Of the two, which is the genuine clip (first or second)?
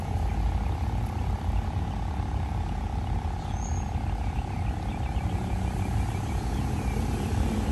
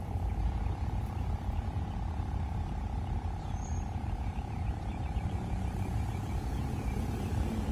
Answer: first